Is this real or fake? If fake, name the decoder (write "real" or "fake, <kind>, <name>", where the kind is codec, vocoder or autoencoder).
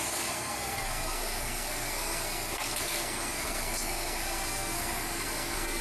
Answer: fake, codec, SNAC